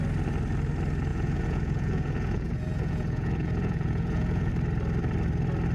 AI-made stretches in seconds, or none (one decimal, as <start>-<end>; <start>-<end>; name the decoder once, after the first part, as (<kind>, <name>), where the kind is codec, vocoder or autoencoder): 1.1-4.5 (vocoder, Vocos)